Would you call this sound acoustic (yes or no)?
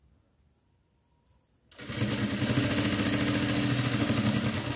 yes